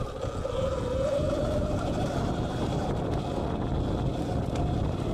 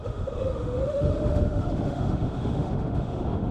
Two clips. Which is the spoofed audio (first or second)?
second